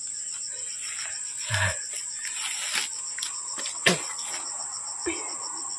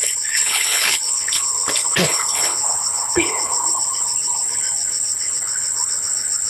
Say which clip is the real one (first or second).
first